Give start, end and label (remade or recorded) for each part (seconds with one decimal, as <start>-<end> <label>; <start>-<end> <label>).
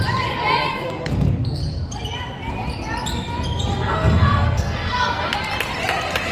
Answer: 0.0-0.7 recorded; 0.7-1.6 remade; 1.6-3.7 recorded; 3.7-5.2 remade; 5.2-6.3 recorded